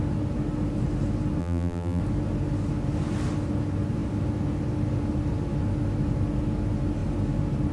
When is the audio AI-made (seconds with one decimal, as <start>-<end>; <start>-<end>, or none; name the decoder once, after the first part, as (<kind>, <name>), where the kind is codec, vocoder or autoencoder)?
1.4-2.0 (vocoder, BigVGAN v2)